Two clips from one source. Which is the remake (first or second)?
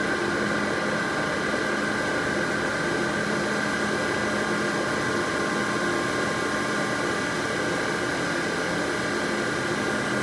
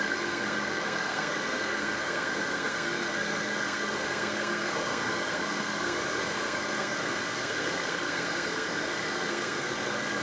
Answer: second